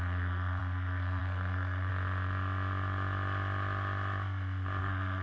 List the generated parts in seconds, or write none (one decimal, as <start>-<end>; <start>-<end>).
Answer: 0.0-1.9; 4.8-5.2